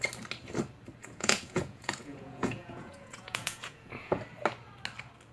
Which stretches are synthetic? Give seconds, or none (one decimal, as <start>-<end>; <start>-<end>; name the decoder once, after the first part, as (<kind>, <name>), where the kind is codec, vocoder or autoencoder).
1.0-4.2 (vocoder, Vocos)

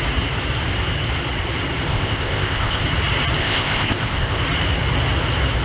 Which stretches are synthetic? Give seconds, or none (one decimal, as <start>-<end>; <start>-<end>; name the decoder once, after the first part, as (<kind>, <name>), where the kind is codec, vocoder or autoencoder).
1.9-2.8 (codec, ZipCodec); 3.4-4.4

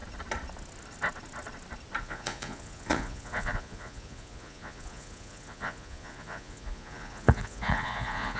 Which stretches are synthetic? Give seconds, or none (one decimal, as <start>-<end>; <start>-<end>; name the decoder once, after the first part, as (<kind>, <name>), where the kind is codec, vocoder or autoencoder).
2.0-8.4 (vocoder, Vocos)